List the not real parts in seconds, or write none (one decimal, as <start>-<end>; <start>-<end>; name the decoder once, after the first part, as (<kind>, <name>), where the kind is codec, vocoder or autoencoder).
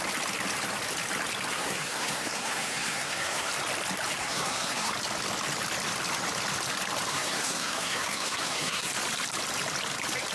1.5-3.5 (codec, SNAC); 4.2-4.9; 7.1-8.9